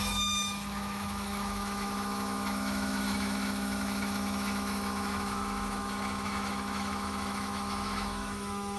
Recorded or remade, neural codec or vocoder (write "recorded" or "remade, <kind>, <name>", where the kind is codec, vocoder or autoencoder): remade, autoencoder, DAC-VAE